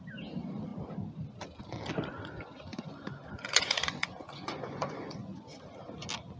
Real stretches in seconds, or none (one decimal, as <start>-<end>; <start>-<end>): 0.0-2.7; 5.4-6.4